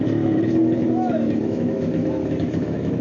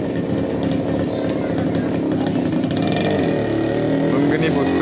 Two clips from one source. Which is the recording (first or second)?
second